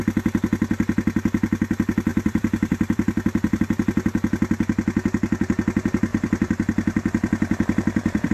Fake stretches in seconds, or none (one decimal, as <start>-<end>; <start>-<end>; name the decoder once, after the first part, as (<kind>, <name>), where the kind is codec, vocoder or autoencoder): 2.1-3.6 (vocoder, BigVGAN v2); 6.1-8.3